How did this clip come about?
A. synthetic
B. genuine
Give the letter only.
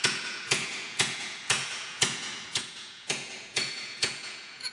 A